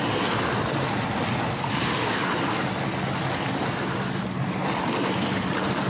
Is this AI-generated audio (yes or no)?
no